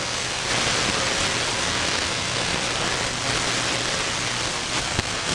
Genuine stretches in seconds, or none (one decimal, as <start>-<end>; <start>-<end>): 0.4-1.6; 2.5-4.8